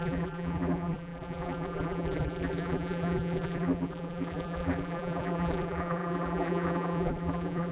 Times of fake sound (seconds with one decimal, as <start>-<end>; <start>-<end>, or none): 0.0-7.7